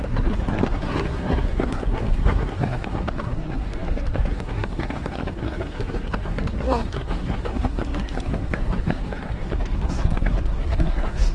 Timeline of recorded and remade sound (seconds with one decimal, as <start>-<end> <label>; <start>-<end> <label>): 0.0-11.3 remade